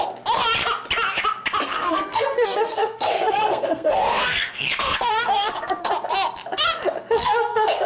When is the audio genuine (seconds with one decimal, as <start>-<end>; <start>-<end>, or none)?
0.0-1.7; 5.9-7.2